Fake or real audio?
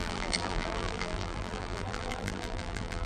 fake